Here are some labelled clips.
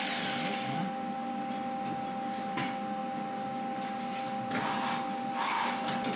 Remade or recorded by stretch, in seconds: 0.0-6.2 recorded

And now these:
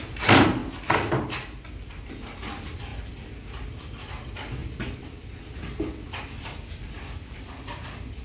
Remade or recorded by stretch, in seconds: 0.0-0.6 recorded; 0.6-1.1 remade; 1.1-2.9 recorded; 2.9-4.1 remade; 4.1-4.6 recorded; 4.6-8.2 remade

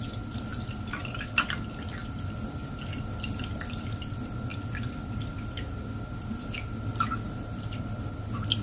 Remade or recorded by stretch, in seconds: 0.0-8.6 recorded

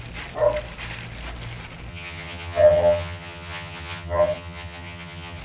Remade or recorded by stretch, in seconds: 0.0-1.9 recorded; 1.9-5.4 remade

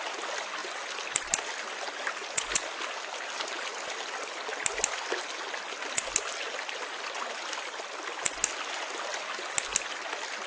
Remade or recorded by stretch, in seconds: 0.0-0.6 recorded; 0.6-1.8 remade; 1.8-10.5 recorded